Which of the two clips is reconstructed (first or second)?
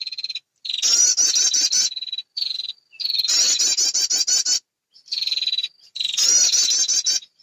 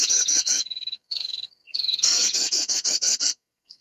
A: second